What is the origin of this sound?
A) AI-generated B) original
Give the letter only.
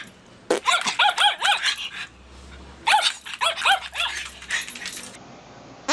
B